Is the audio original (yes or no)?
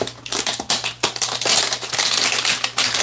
yes